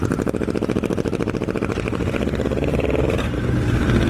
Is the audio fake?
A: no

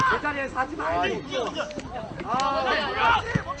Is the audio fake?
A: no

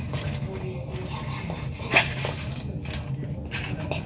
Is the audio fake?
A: no